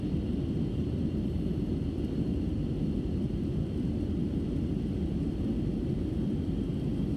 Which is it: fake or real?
real